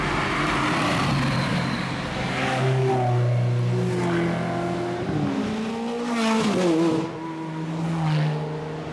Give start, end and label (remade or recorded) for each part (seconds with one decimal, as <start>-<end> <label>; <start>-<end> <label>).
0.0-1.5 recorded; 1.5-2.9 remade; 2.9-8.9 recorded